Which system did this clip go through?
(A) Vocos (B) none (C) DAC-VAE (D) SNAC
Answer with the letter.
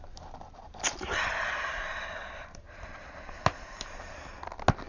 B